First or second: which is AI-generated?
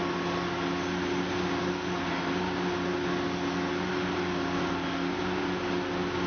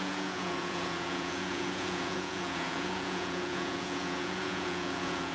second